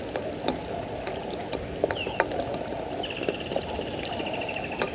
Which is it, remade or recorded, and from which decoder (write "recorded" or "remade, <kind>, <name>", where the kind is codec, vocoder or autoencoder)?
recorded